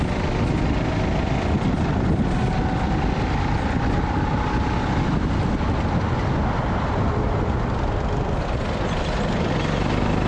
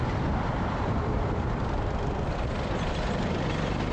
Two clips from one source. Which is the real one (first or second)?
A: first